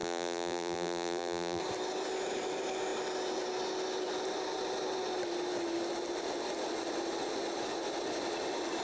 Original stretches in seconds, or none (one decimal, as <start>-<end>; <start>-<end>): 1.6-8.8